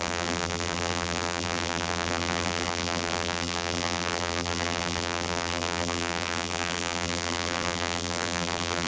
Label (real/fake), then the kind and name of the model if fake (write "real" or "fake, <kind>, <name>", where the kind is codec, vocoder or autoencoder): fake, vocoder, BigVGAN v2